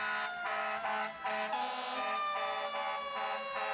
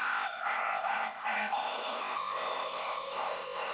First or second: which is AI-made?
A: second